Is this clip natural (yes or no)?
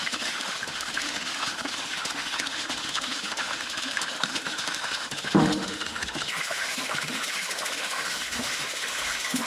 no